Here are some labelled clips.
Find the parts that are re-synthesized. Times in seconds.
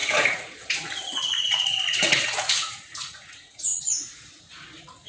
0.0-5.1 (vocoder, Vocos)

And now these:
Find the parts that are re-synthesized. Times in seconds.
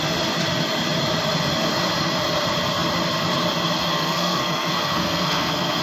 3.9-5.8 (codec, SNAC)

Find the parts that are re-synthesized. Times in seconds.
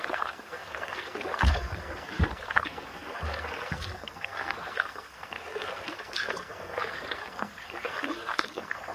0.0-8.9 (codec, SNAC)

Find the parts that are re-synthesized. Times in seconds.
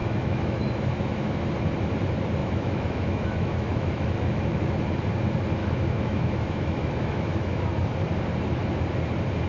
0.0-1.5 (autoencoder, DAC-VAE); 2.4-4.7; 5.6-7.7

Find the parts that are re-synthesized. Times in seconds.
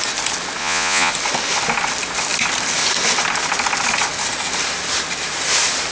0.6-1.1 (vocoder, Vocos)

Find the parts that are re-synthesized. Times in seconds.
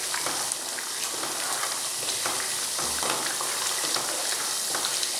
none